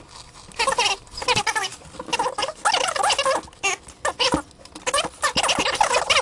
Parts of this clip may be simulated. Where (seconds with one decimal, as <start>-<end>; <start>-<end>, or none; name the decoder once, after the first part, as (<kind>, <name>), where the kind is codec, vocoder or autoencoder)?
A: none